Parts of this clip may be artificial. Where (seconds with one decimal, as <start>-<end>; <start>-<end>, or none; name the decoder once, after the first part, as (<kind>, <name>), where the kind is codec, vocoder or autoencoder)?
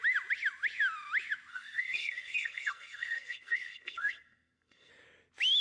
1.5-4.9 (codec, SNAC)